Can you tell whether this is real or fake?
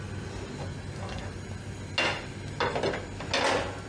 real